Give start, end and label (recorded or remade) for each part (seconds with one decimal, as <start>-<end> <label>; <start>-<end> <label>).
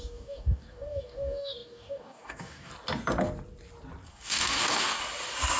0.0-2.7 remade; 2.7-4.1 recorded; 4.1-5.0 remade; 5.0-5.6 recorded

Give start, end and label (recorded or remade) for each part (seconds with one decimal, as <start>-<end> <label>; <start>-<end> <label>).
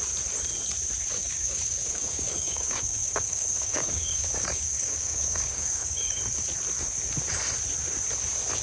0.0-1.2 recorded; 1.2-6.2 remade; 6.2-8.6 recorded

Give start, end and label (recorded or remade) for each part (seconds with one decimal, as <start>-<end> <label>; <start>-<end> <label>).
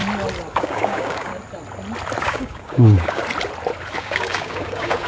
0.0-0.5 recorded; 0.5-1.3 remade; 1.3-2.2 recorded; 2.2-3.2 remade; 3.2-4.0 recorded; 4.0-5.1 remade